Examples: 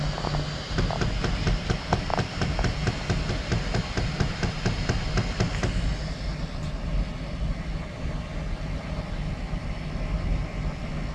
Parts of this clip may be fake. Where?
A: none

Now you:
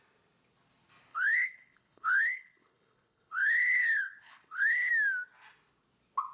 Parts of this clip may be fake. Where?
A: 1.1-4.9 (codec, HILCodec)

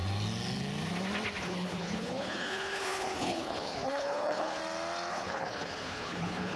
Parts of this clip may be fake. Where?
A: 1.4-4.6 (codec, HILCodec); 5.1-6.6